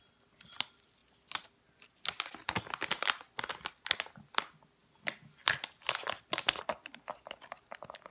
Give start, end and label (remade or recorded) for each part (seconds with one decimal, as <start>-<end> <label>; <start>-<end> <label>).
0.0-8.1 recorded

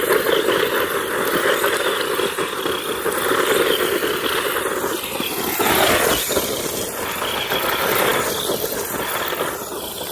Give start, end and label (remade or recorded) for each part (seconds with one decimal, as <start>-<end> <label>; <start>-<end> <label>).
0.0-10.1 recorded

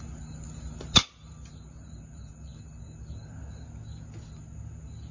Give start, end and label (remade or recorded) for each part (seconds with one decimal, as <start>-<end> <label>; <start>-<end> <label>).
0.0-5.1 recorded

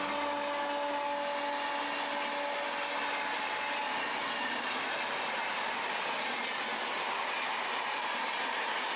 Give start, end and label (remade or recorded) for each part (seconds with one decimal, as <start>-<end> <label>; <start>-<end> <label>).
0.0-9.0 recorded